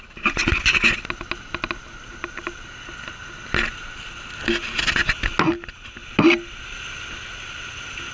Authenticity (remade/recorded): recorded